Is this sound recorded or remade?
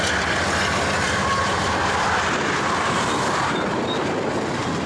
remade